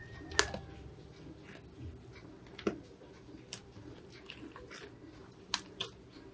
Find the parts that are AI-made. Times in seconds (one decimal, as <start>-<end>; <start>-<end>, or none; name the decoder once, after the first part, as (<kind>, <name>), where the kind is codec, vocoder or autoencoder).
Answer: 0.9-4.0 (vocoder, BigVGAN v2); 5.2-5.8